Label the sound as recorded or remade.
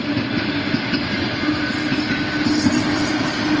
recorded